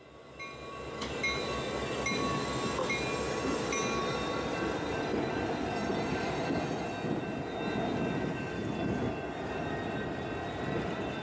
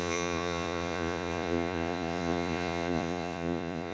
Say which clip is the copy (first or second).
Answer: second